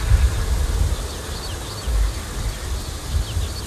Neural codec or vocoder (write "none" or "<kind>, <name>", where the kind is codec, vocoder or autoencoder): none